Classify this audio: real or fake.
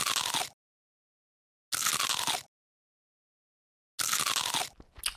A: real